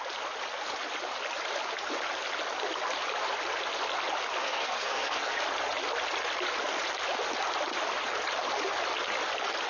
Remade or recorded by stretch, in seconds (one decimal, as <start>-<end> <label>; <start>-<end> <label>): 0.0-4.4 recorded; 4.4-5.3 remade; 5.3-9.7 recorded